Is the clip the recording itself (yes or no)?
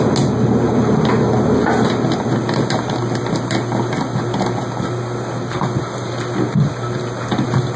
yes